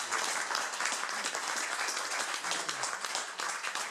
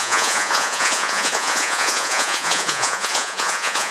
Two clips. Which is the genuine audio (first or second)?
first